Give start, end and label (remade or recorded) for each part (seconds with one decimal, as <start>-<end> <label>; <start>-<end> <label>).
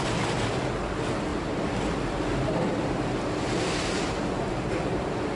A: 0.0-1.3 recorded; 1.3-4.5 remade; 4.5-5.3 recorded